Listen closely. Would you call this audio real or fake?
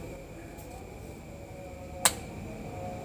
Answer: real